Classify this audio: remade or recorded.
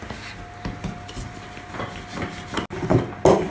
recorded